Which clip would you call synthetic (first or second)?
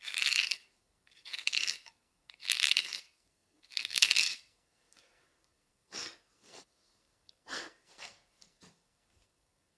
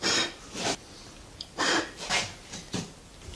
first